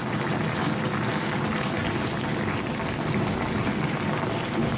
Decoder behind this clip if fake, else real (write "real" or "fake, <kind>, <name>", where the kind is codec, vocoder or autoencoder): real